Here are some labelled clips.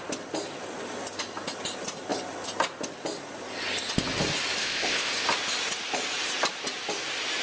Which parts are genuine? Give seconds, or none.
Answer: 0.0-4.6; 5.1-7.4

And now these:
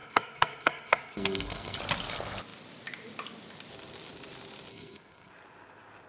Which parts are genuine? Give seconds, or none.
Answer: 1.8-4.7; 5.3-6.1

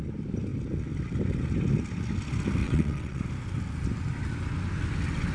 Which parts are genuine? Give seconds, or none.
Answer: 0.0-2.6; 3.2-5.3

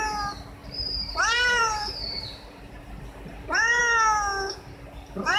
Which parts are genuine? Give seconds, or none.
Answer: 0.0-0.6; 3.8-5.4

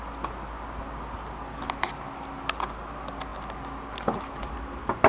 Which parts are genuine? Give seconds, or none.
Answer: 0.0-5.1